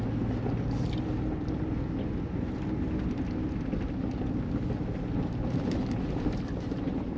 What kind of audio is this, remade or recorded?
recorded